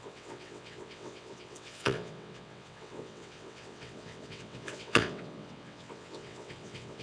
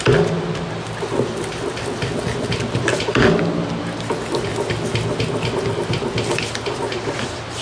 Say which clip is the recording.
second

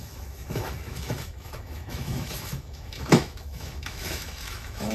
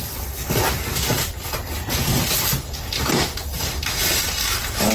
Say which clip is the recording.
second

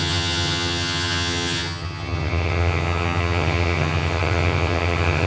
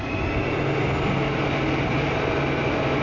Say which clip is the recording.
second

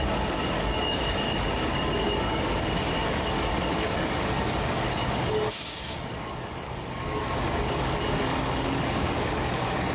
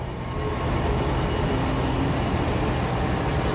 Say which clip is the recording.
second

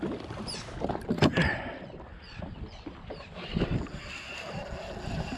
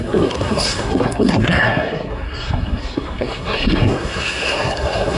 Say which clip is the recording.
first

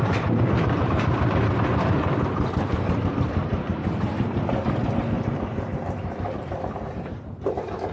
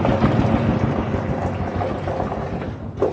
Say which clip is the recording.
second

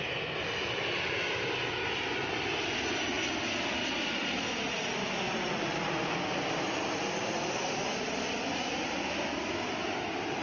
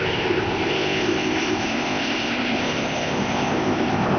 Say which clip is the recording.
first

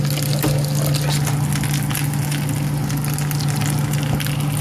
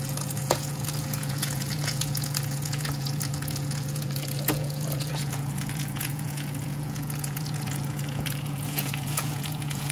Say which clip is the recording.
first